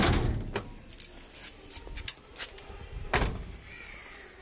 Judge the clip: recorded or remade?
recorded